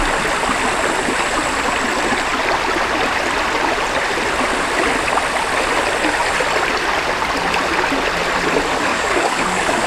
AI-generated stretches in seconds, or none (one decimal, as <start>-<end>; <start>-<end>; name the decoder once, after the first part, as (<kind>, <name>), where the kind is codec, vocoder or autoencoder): 8.9-9.9 (codec, DAC)